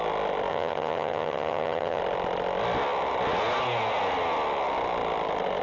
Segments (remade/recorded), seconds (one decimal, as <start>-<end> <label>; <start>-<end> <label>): 0.0-0.5 recorded; 0.5-2.0 remade; 2.0-5.6 recorded